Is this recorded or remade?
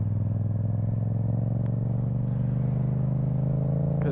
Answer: recorded